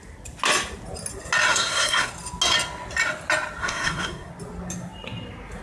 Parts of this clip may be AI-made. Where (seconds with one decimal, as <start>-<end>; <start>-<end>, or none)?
1.5-2.1; 3.6-4.3